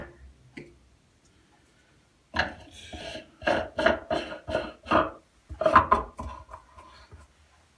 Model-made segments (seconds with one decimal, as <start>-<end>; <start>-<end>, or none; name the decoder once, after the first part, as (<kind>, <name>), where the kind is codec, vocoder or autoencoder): none